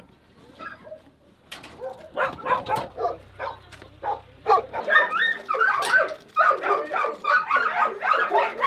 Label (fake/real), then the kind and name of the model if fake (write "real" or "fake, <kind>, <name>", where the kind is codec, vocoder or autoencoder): fake, vocoder, BigVGAN v2